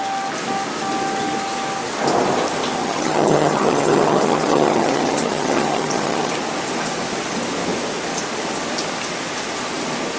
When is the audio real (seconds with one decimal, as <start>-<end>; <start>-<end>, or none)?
0.0-2.8; 6.3-10.2

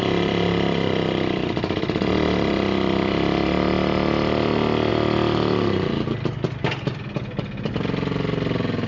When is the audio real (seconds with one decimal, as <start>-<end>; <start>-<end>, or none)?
0.0-8.9

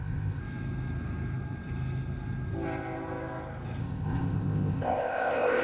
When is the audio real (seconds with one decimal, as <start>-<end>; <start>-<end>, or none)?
0.4-3.8